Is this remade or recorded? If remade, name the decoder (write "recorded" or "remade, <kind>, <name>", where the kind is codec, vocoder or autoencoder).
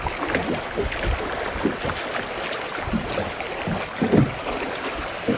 recorded